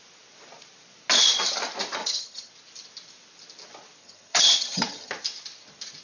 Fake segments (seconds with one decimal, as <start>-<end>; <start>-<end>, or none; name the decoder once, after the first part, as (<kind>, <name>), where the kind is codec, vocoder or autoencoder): 2.0-2.5 (vocoder, HiFi-GAN); 4.0-5.1